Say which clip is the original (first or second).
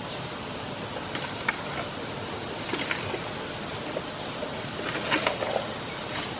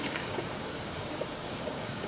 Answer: first